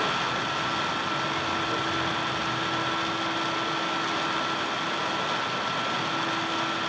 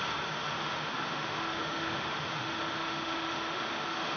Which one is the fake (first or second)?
second